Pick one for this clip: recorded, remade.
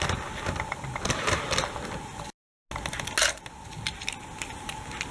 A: recorded